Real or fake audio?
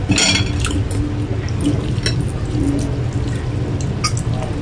real